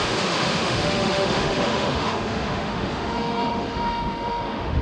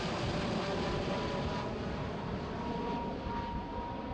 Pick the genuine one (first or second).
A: second